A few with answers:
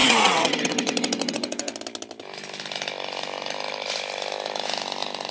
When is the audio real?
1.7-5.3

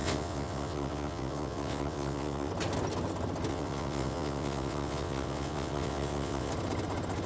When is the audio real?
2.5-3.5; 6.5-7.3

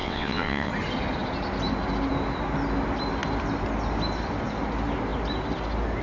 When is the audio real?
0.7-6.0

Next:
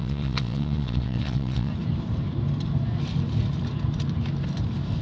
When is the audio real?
1.7-5.0